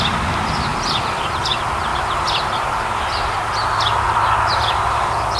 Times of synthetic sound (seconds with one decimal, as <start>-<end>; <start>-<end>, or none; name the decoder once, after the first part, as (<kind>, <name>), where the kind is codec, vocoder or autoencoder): 0.0-1.9 (vocoder, BigVGAN v2); 4.5-5.4